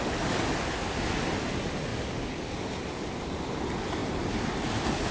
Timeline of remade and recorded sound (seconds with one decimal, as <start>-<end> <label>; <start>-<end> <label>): 0.0-1.9 recorded; 1.9-2.5 remade; 2.5-5.1 recorded